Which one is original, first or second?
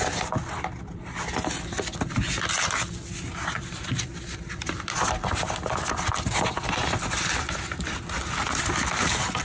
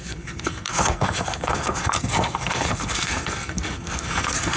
first